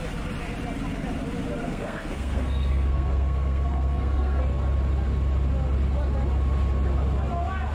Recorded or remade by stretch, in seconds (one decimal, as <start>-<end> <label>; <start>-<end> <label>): 0.0-1.6 recorded; 1.6-4.4 remade; 4.4-7.7 recorded